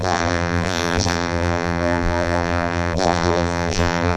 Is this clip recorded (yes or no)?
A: no